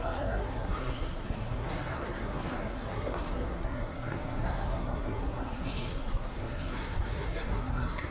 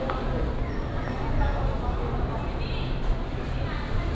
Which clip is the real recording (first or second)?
second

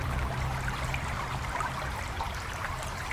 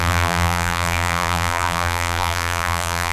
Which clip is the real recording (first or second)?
first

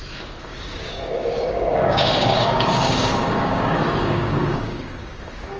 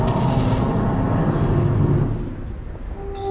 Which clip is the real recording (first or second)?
second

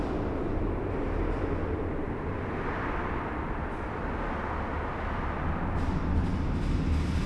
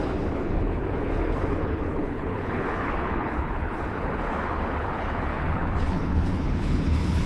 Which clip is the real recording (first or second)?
first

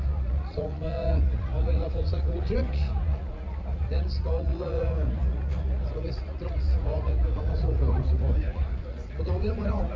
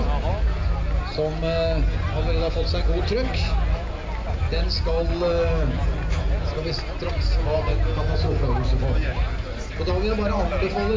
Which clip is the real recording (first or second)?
second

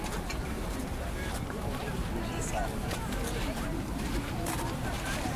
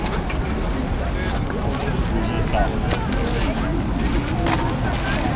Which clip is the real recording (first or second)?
second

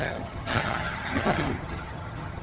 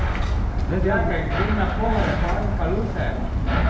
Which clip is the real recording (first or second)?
second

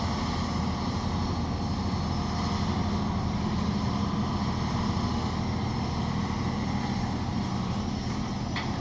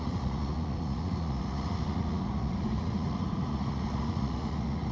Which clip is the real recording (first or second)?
first